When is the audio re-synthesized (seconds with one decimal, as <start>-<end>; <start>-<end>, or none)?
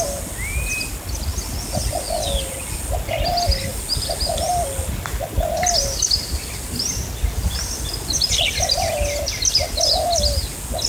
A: none